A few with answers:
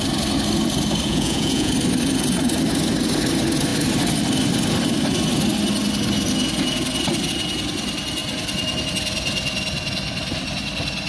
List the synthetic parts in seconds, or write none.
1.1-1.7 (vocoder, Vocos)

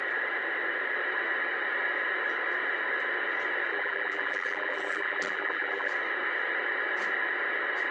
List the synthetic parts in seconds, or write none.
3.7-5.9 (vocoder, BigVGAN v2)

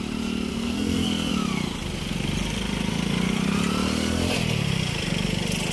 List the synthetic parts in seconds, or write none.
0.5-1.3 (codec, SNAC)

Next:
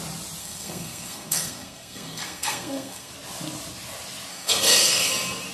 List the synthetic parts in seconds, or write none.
0.4-3.1 (codec, SNAC); 4.3-5.1

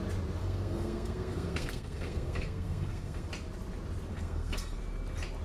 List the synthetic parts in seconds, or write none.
0.4-3.3 (codec, SNAC); 4.1-4.8

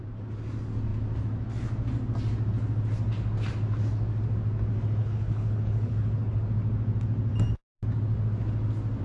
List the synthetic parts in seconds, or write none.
5.0-6.4 (codec, HILCodec)